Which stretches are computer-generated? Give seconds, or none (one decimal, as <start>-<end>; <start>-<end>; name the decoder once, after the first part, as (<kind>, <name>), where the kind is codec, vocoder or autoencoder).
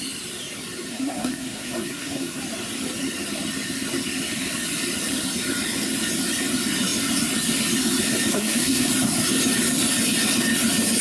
0.9-2.4 (codec, SNAC); 8.3-8.9